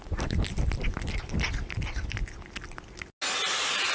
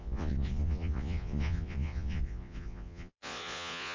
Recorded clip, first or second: first